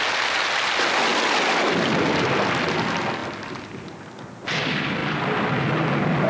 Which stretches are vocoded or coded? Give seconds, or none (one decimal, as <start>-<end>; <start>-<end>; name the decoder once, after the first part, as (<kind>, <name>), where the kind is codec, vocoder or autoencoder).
none